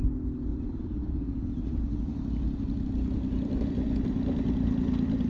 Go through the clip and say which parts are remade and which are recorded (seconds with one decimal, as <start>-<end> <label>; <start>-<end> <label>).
0.0-0.5 recorded; 0.5-3.7 remade; 3.7-5.3 recorded